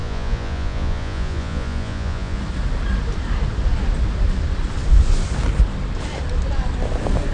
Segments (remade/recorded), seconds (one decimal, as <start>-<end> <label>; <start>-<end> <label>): 0.0-2.4 remade; 2.4-7.3 recorded